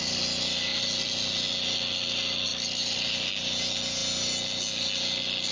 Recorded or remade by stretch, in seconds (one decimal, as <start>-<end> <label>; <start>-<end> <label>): 0.0-2.5 recorded; 2.5-3.3 remade; 3.3-5.5 recorded